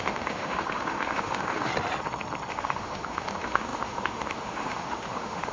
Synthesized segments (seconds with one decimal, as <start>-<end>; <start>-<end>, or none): 0.0-1.7; 2.5-5.5